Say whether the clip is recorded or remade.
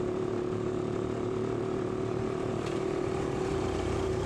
remade